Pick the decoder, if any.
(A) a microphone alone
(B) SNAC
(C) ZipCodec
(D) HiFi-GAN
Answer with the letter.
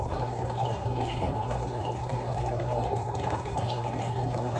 B